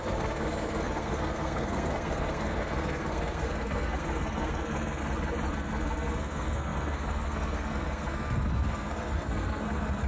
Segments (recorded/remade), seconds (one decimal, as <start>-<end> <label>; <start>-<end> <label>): 0.0-5.0 remade; 5.0-5.5 recorded; 5.5-10.1 remade